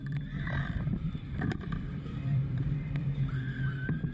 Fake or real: fake